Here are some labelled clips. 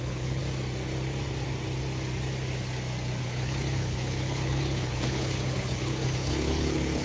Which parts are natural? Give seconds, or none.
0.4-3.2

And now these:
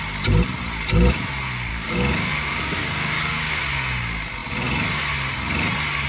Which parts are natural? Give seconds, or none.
0.0-1.7; 3.6-6.1

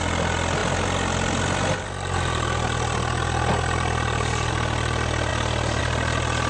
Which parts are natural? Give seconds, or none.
0.0-6.5

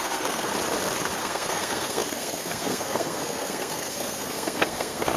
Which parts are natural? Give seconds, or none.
0.5-1.2

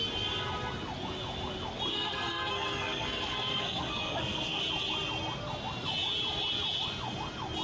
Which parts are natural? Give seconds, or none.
0.0-1.9; 4.6-7.6

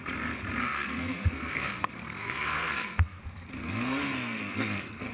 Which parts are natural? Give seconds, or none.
0.0-0.6; 3.2-3.6

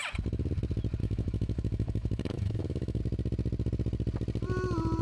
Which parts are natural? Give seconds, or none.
0.0-1.0; 3.0-5.0

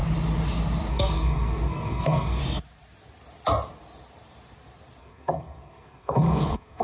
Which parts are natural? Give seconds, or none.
0.0-0.9; 2.4-5.0